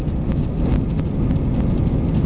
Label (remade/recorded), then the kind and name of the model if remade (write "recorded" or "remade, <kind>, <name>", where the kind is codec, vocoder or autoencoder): recorded